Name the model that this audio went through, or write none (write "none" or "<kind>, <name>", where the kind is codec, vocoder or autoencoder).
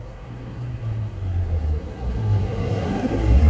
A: codec, SNAC